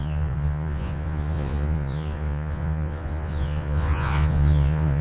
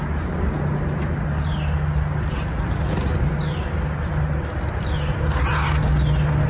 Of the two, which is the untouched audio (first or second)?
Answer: second